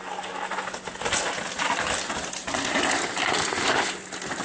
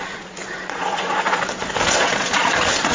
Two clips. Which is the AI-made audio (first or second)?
second